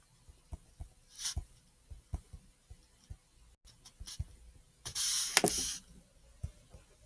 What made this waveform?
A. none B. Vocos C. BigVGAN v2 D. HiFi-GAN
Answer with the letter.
A